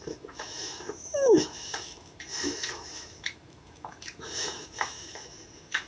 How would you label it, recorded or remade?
remade